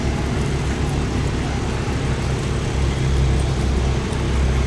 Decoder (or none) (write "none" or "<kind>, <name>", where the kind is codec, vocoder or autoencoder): none